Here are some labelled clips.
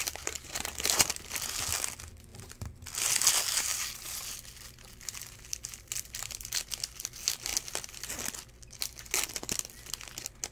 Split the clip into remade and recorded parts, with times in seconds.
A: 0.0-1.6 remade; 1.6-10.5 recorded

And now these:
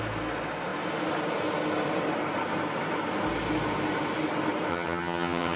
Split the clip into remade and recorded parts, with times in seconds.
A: 0.0-4.7 recorded; 4.7-5.6 remade

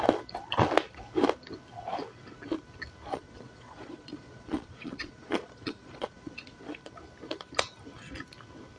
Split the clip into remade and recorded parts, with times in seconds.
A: 0.0-3.1 recorded; 3.1-6.8 remade; 6.8-8.8 recorded

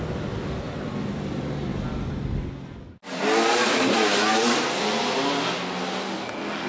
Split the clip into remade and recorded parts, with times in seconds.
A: 0.0-6.7 recorded

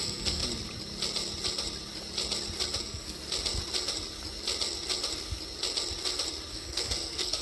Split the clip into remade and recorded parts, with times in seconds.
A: 0.0-0.4 remade; 0.4-2.8 recorded; 2.8-3.2 remade; 3.2-6.5 recorded; 6.5-7.4 remade

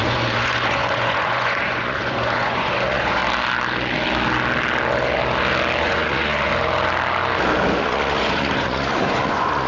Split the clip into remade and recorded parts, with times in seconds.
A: 0.0-3.2 remade; 3.2-5.8 recorded; 5.8-6.5 remade; 6.5-7.8 recorded; 7.8-9.7 remade

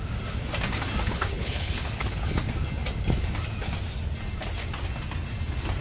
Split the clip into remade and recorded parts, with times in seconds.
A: 0.0-1.1 recorded; 1.1-2.3 remade; 2.3-5.8 recorded

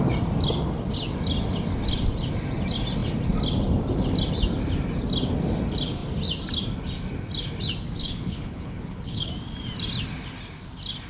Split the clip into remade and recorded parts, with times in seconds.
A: 0.0-8.0 recorded; 8.0-9.3 remade; 9.3-11.1 recorded